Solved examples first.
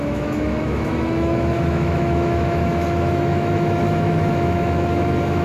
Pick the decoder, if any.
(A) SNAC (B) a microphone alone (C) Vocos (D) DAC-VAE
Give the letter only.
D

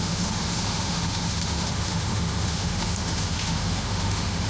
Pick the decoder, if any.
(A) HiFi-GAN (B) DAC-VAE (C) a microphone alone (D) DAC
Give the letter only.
B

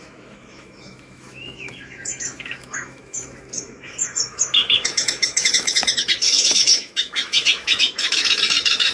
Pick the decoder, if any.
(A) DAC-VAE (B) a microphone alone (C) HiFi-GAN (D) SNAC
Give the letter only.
A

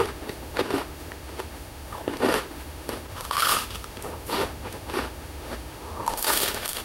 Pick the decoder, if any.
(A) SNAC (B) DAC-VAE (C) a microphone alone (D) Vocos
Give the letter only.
B